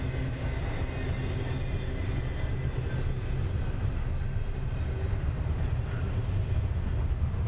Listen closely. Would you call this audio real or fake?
real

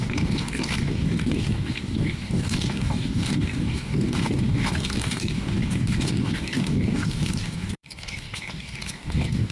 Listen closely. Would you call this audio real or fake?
fake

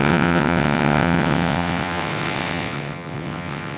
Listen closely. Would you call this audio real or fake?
fake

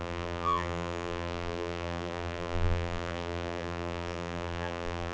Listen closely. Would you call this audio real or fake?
fake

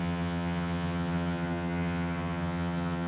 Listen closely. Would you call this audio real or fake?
fake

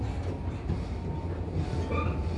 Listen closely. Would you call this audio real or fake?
real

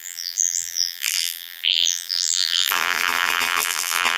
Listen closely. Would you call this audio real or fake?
fake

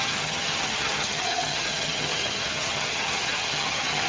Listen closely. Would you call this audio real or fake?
fake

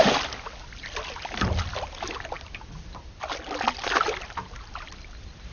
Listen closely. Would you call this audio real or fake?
real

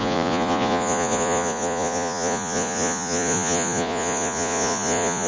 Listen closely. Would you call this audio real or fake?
fake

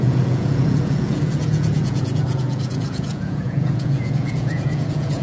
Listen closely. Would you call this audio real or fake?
fake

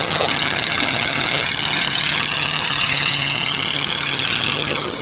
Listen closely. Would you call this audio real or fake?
fake